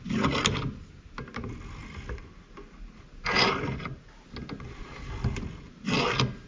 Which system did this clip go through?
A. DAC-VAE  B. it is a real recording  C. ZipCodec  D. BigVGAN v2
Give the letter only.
B